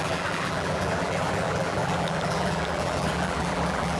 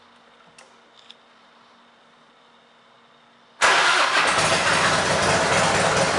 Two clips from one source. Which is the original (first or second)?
second